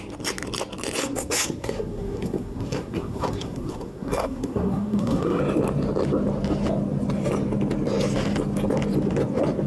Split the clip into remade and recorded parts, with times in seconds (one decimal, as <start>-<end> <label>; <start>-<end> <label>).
0.0-1.0 recorded; 1.0-5.4 remade; 5.4-9.7 recorded